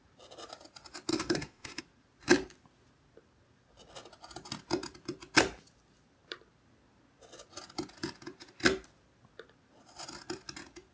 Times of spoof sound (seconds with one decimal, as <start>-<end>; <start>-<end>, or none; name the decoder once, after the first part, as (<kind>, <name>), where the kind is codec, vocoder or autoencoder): 1.1-1.8 (autoencoder, DAC-VAE)